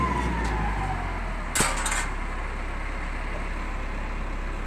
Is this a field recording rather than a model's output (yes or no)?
yes